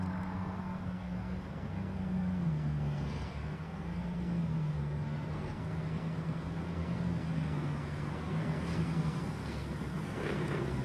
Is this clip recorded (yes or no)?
no